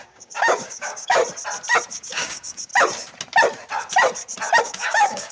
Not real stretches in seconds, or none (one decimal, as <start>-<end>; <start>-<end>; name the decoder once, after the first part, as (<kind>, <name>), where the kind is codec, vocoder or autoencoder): 0.0-1.2 (codec, DAC); 1.9-2.7; 4.6-5.3